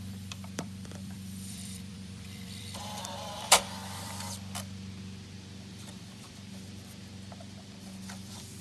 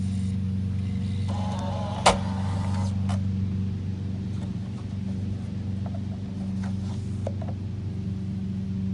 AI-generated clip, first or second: first